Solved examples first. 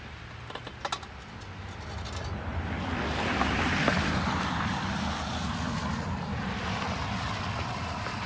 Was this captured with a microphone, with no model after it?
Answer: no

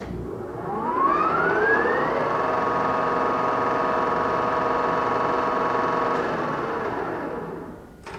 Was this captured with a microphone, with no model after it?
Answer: yes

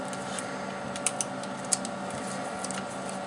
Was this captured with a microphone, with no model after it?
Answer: yes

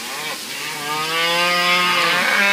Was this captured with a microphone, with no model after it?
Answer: yes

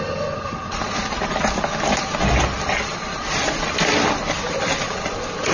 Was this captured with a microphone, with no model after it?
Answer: yes